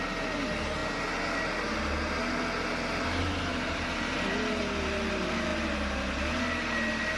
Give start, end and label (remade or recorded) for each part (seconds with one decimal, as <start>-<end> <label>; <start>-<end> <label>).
0.0-7.2 recorded

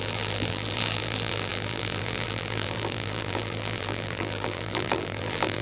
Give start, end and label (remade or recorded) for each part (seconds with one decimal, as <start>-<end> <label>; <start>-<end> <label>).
0.0-5.6 remade